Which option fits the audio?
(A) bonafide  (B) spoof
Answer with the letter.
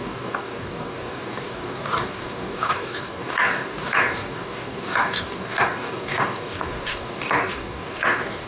B